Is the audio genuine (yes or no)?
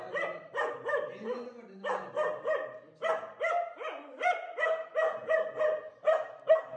yes